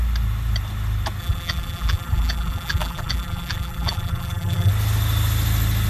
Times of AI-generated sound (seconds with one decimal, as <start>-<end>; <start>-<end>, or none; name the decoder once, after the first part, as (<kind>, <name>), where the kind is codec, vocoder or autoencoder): 1.2-4.7 (vocoder, BigVGAN v2)